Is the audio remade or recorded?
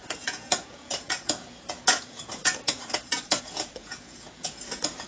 remade